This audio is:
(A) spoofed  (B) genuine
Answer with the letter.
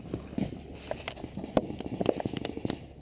B